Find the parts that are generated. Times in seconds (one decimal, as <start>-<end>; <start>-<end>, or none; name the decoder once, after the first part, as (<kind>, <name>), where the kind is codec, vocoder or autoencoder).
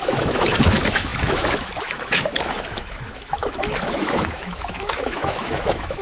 0.0-6.0 (autoencoder, DAC-VAE)